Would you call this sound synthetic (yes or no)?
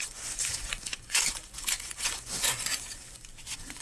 yes